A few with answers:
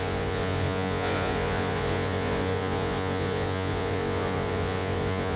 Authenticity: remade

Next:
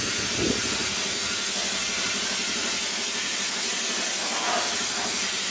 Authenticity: recorded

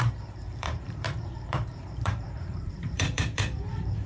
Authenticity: remade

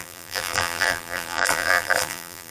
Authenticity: remade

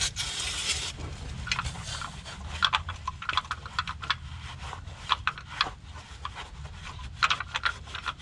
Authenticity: recorded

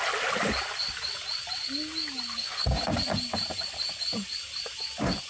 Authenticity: recorded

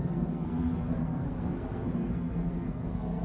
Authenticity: remade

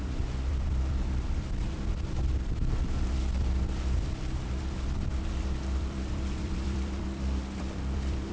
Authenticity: remade